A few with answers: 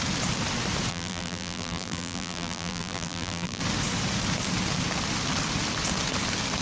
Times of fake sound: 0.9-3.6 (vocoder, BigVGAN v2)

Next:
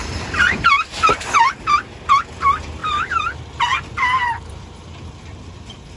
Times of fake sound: 0.0-1.4 (vocoder, BigVGAN v2); 2.8-6.0